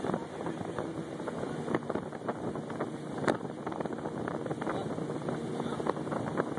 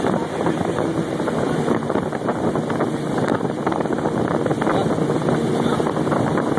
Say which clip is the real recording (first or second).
first